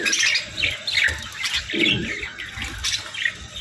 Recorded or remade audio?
recorded